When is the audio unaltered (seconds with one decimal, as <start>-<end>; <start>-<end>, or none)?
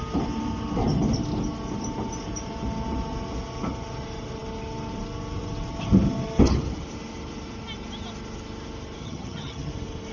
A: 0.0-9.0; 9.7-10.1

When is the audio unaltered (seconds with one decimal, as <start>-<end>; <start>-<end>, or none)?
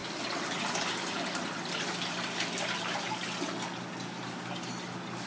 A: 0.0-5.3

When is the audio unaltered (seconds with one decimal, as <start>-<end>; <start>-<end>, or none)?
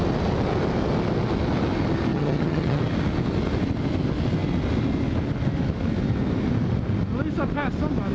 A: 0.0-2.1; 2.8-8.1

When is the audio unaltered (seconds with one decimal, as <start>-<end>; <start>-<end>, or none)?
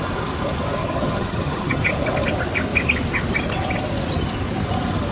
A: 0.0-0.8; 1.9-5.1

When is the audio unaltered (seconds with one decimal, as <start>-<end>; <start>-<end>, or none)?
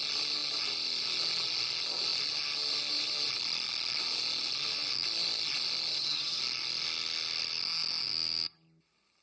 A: 0.0-5.9; 6.4-9.2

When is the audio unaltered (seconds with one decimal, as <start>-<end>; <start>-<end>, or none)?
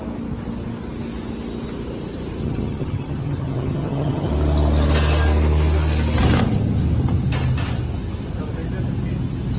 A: 0.0-2.4; 4.3-9.6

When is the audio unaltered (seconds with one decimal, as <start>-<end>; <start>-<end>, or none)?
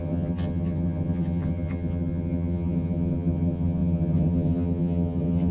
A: none